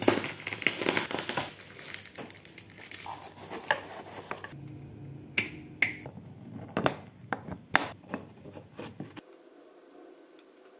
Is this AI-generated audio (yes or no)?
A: no